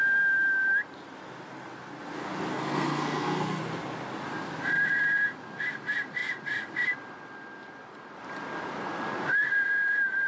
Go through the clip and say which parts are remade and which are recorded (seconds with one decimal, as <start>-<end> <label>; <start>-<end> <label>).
0.0-2.5 recorded; 2.5-3.6 remade; 3.6-10.3 recorded